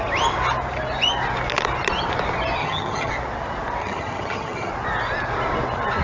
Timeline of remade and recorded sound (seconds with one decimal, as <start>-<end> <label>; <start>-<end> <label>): 0.0-2.6 recorded; 2.6-3.1 remade; 3.1-3.8 recorded; 3.8-4.7 remade; 4.7-6.0 recorded